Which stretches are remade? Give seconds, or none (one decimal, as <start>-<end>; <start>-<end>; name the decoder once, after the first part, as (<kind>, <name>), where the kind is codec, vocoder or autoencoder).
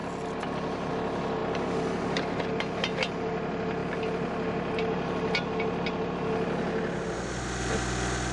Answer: none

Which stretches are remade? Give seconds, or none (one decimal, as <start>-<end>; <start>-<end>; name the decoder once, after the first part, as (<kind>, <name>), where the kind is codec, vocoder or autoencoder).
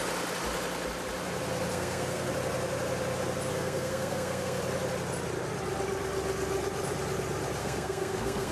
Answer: 1.7-2.3 (codec, SNAC); 3.5-4.6; 7.6-8.5